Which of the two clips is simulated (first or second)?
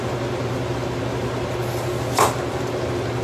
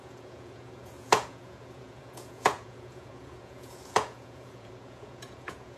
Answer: second